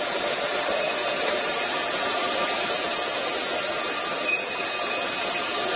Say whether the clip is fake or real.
fake